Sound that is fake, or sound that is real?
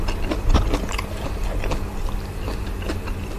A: real